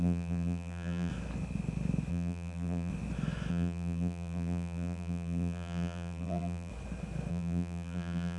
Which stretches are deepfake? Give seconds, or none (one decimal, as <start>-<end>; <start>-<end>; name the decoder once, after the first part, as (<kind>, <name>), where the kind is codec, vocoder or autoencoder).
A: 0.0-1.1 (vocoder, BigVGAN v2); 2.1-2.9; 3.5-6.7; 7.3-8.4